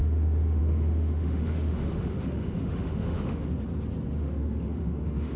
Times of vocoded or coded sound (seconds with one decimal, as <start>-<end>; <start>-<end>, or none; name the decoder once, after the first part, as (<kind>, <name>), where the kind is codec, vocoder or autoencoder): 0.0-3.5 (autoencoder, DAC-VAE); 4.2-5.4